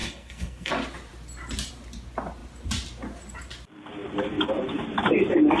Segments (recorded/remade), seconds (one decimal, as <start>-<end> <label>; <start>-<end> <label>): 0.0-0.7 remade; 0.7-5.6 recorded